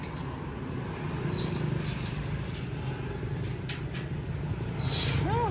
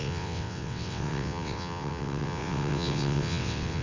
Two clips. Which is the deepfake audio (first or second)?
second